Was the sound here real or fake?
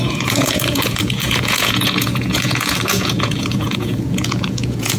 fake